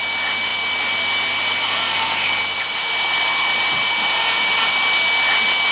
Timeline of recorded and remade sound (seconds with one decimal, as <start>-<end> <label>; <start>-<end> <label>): 0.0-5.7 recorded